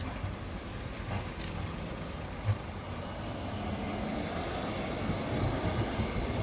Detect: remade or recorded recorded